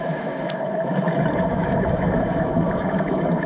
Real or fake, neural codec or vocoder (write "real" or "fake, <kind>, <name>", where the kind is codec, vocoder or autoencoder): fake, autoencoder, DAC-VAE